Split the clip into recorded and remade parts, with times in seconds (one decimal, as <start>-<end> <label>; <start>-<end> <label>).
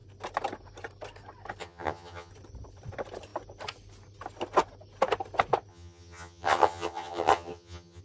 0.0-1.6 recorded; 1.6-2.3 remade; 2.3-5.7 recorded; 5.7-8.0 remade